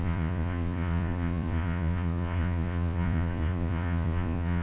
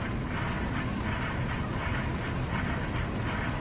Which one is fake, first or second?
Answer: first